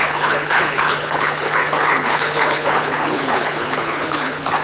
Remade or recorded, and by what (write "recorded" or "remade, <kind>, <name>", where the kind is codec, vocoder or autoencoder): remade, codec, HILCodec